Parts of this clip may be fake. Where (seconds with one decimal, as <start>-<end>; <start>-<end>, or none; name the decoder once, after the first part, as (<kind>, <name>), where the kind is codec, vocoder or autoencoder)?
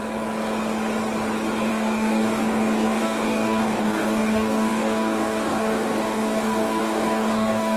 1.7-7.8 (codec, DAC)